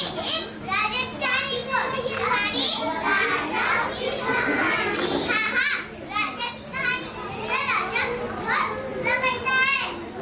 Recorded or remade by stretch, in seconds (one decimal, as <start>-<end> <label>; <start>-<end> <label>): 0.0-10.2 recorded